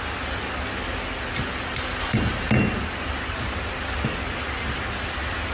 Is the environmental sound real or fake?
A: real